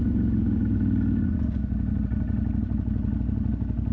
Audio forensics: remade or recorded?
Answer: recorded